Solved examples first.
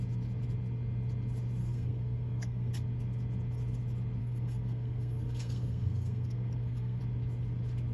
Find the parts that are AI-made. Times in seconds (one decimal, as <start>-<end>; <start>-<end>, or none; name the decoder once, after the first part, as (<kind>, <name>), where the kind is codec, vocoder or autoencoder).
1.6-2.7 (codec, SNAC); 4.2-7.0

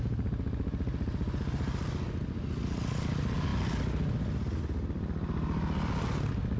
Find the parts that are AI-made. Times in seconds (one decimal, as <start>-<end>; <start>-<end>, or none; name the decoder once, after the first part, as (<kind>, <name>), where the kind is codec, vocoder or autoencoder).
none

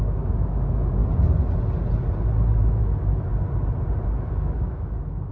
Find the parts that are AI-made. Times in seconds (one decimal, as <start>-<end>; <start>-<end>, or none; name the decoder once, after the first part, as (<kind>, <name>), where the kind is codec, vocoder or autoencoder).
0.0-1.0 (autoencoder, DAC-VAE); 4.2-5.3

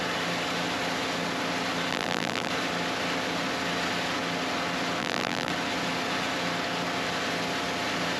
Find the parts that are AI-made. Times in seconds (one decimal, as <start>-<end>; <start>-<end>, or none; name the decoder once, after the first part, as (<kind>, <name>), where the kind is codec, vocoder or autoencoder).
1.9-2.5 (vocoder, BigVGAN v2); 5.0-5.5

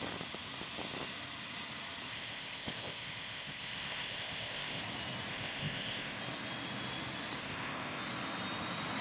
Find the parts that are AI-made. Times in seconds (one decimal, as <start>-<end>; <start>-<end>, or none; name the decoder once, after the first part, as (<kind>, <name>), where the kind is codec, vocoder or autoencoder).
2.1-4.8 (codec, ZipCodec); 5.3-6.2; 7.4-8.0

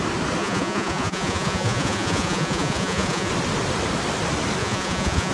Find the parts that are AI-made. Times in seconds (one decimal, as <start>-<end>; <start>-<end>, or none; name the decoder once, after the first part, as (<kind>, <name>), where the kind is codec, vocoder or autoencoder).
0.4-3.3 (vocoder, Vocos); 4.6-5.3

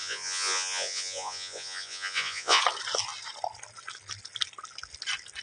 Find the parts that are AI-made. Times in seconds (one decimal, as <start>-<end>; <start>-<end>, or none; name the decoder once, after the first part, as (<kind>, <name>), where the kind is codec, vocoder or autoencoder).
0.0-2.6 (vocoder, Vocos)

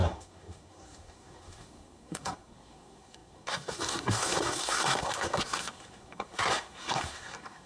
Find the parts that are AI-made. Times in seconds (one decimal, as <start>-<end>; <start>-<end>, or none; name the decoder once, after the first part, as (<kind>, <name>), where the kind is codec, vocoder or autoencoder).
0.0-7.7 (codec, SNAC)